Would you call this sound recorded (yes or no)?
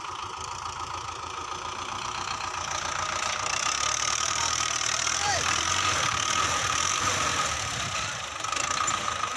no